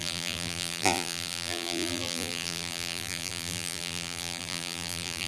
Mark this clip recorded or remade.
remade